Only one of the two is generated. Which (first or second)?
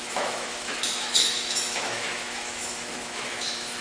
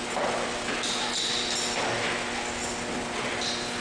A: first